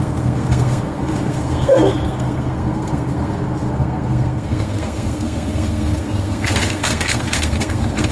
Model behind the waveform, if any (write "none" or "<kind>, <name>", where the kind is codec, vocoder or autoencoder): codec, SNAC